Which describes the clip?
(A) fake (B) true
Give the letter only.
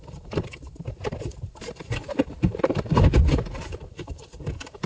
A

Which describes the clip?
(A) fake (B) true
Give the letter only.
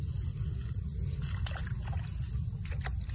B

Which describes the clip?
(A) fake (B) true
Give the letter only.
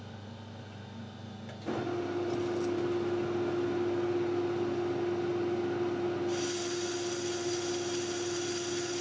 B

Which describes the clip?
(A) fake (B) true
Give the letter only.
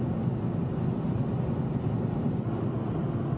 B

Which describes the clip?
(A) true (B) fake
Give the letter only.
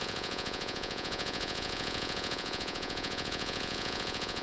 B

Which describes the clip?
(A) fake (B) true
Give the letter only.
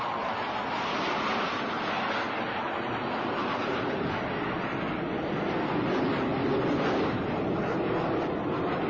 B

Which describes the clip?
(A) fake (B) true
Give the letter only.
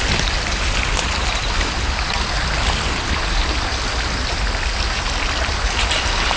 B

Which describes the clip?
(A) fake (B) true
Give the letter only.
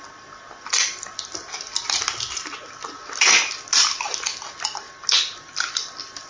B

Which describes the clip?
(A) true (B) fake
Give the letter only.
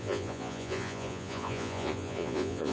B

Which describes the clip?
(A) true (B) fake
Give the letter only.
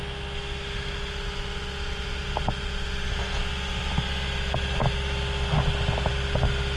A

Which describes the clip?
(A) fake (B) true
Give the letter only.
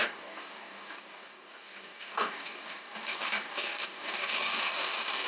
A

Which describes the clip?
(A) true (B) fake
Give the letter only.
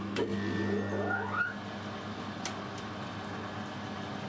A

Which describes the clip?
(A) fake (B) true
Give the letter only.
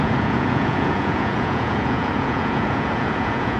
A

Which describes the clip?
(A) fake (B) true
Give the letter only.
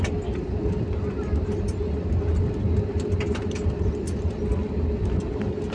B